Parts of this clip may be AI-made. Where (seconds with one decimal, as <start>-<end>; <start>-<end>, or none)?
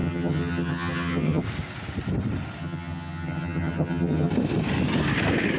0.0-1.4; 2.6-4.3